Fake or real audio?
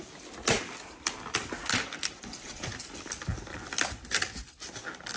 real